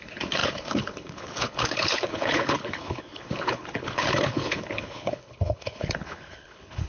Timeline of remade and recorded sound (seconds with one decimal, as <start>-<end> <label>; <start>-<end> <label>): 0.0-6.9 remade